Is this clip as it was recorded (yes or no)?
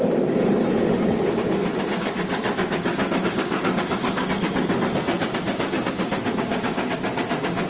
yes